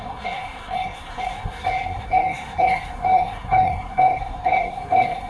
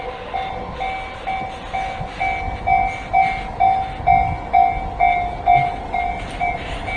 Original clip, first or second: second